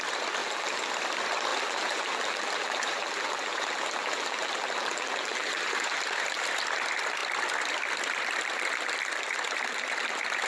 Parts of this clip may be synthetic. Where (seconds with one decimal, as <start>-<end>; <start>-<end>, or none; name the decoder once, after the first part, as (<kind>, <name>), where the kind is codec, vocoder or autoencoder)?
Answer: 0.4-0.9 (vocoder, BigVGAN v2); 1.5-6.0